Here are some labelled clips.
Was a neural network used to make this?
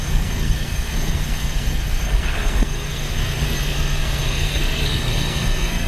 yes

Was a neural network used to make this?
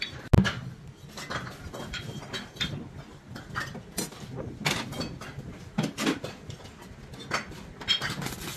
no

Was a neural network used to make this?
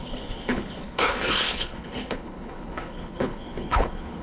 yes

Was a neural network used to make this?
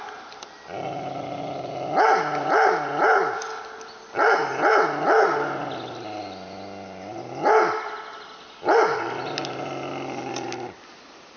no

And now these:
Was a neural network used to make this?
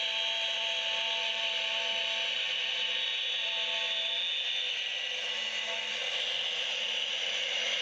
no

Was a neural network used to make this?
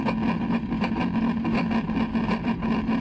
no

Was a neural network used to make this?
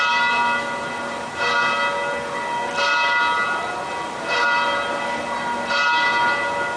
no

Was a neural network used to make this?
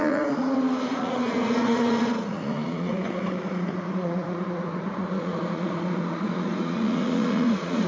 yes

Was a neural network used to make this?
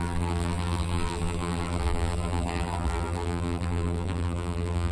yes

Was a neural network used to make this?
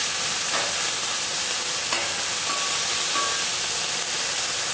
no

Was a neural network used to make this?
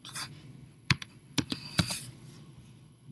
yes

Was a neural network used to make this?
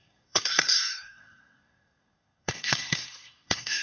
yes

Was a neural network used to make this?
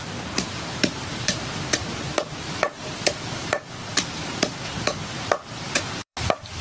yes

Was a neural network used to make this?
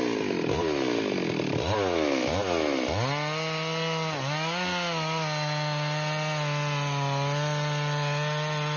no